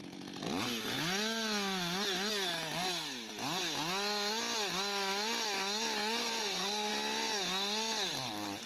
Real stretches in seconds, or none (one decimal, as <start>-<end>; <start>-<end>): 0.0-6.2; 6.9-8.7